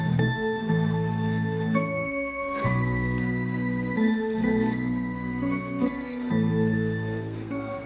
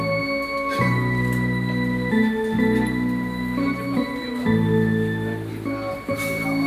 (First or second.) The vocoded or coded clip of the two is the first